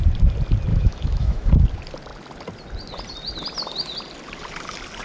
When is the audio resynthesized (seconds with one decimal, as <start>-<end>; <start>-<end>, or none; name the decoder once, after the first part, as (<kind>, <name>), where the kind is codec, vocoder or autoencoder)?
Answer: 0.7-1.5 (autoencoder, DAC-VAE)